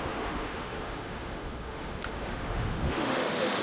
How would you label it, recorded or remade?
remade